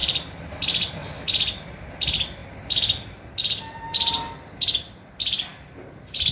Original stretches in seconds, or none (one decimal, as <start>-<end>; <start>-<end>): 0.0-6.3